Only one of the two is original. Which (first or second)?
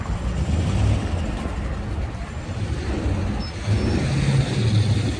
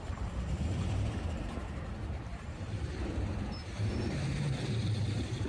first